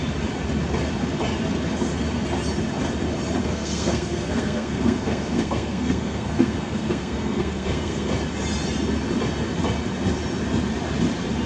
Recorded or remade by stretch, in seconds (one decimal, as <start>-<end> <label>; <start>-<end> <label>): 0.0-3.4 recorded; 3.4-8.1 remade; 8.1-11.5 recorded